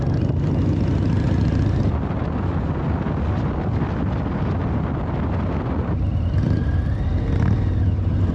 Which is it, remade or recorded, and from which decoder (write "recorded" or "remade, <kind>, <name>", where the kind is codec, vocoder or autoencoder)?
recorded